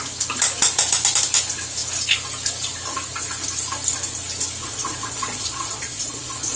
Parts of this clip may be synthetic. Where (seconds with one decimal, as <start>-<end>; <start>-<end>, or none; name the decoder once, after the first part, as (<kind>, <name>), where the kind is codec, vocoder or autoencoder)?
4.6-6.6 (vocoder, Vocos)